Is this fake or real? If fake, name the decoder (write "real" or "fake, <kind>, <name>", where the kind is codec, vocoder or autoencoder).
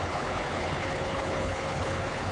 fake, codec, HILCodec